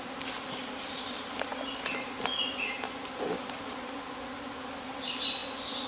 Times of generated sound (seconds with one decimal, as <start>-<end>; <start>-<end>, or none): none